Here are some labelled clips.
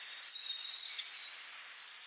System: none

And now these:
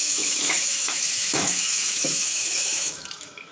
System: autoencoder, DAC-VAE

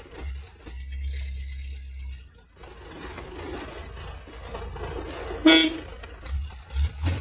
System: none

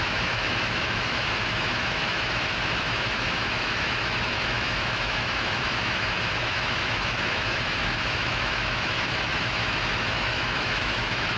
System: autoencoder, DAC-VAE